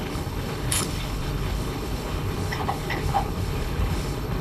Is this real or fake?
fake